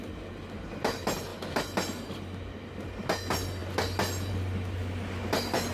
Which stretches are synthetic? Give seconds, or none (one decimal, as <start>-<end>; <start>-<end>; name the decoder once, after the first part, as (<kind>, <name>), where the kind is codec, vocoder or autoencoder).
none